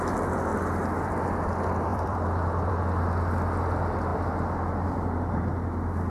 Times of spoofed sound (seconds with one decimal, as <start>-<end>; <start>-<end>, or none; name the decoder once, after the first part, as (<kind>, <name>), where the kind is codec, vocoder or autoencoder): 1.9-2.7 (vocoder, BigVGAN v2)